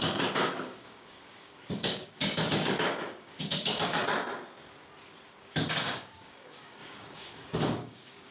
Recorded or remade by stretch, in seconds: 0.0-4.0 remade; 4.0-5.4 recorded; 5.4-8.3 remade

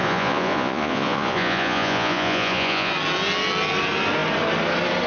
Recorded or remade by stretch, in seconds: 0.0-2.9 remade; 2.9-5.1 recorded

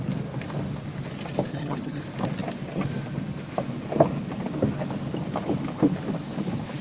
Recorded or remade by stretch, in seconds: 0.0-1.5 recorded; 1.5-2.0 remade; 2.0-6.8 recorded

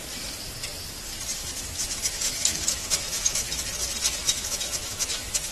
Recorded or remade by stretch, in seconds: 0.0-1.4 recorded; 1.4-3.6 remade; 3.6-4.2 recorded; 4.2-5.5 remade

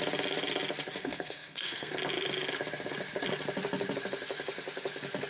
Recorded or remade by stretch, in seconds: 0.0-1.0 recorded; 1.0-1.9 remade; 1.9-5.3 recorded

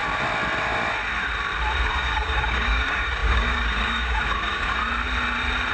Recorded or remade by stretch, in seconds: 0.0-1.9 recorded; 1.9-4.8 remade; 4.8-5.7 recorded